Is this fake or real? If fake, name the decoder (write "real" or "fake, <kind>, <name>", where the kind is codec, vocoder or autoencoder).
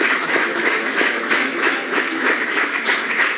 fake, autoencoder, DAC-VAE